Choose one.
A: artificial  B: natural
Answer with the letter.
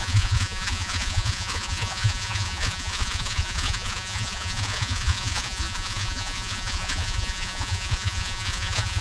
A